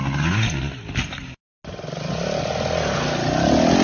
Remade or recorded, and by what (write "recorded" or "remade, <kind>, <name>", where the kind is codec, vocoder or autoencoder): recorded